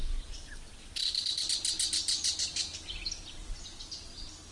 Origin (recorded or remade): recorded